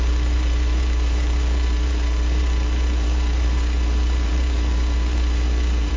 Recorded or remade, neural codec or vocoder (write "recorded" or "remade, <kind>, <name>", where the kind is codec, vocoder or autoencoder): remade, vocoder, BigVGAN v2